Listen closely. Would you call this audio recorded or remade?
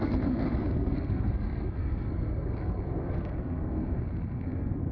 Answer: remade